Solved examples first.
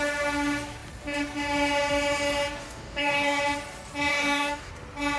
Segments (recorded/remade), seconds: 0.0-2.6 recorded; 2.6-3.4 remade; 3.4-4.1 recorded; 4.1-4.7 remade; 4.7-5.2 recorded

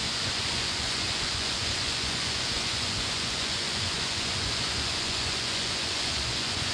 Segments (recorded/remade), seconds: 0.0-6.7 remade